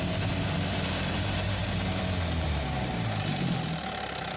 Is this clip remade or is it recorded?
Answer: remade